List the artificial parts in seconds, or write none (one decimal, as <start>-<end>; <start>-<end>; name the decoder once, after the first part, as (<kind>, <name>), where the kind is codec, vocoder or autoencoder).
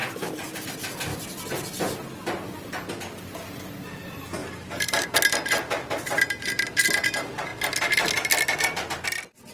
0.0-0.6 (vocoder, BigVGAN v2); 4.4-5.2